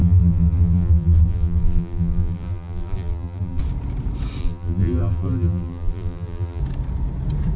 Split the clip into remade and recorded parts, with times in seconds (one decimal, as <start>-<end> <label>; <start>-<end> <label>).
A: 0.0-3.6 remade; 3.6-4.4 recorded; 4.4-6.6 remade; 6.6-7.6 recorded